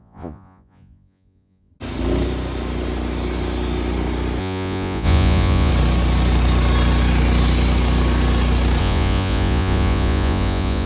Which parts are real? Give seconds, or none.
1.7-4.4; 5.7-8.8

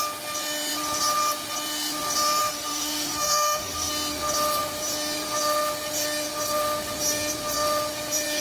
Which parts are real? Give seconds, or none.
0.0-2.4; 3.9-8.4